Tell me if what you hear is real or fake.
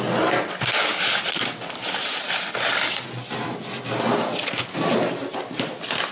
real